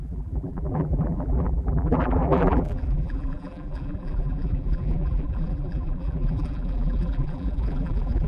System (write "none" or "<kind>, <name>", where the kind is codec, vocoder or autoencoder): vocoder, BigVGAN v2